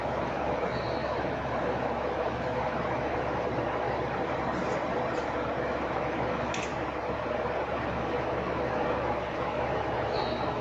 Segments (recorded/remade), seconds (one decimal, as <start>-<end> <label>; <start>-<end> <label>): 0.0-3.5 remade; 3.5-5.6 recorded; 5.6-6.7 remade; 6.7-7.9 recorded; 7.9-10.6 remade